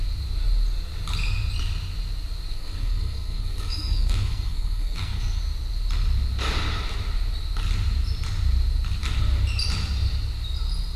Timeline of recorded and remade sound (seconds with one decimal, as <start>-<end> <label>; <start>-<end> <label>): 0.0-2.5 recorded; 2.5-5.4 remade; 5.4-11.0 recorded